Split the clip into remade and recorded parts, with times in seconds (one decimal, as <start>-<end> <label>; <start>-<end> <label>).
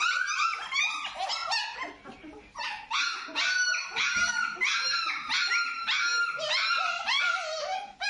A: 0.0-8.1 recorded